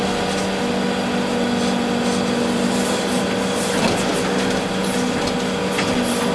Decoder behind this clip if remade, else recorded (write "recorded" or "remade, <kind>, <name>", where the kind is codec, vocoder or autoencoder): recorded